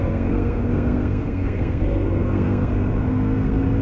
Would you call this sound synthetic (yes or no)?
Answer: yes